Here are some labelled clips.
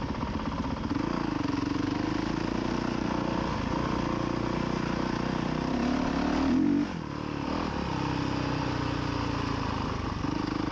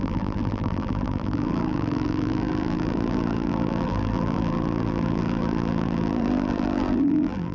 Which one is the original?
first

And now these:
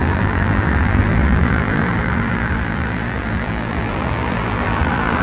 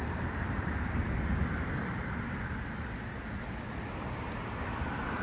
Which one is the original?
second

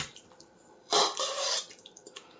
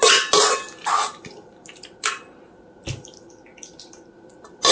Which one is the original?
second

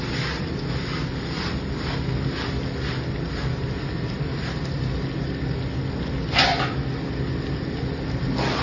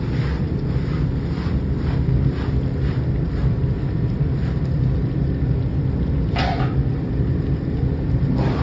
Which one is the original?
first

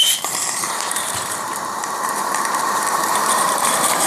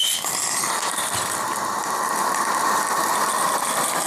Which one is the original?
second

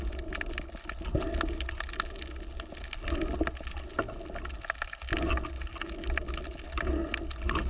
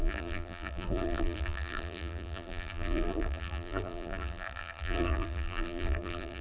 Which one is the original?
first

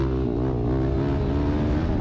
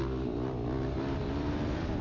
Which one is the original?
first